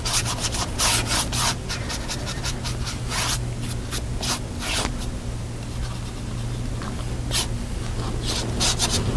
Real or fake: real